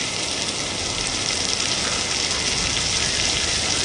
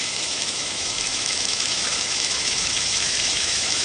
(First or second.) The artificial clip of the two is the second